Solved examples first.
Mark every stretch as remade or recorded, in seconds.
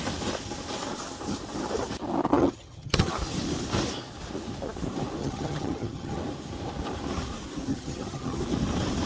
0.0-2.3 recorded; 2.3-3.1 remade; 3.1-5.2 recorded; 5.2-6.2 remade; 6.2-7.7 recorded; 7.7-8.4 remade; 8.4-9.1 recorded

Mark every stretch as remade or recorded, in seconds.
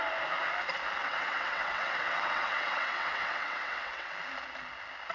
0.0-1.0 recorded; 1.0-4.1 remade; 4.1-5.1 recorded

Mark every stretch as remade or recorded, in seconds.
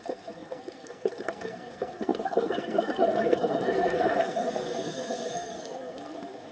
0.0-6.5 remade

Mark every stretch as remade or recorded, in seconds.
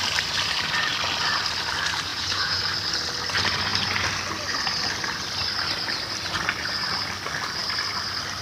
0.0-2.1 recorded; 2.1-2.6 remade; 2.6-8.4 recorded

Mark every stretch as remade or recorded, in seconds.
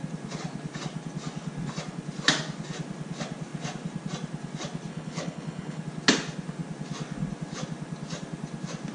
0.0-4.9 recorded; 4.9-5.8 remade; 5.8-8.9 recorded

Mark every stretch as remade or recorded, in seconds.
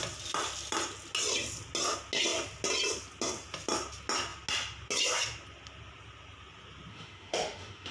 0.0-6.9 recorded; 6.9-7.9 remade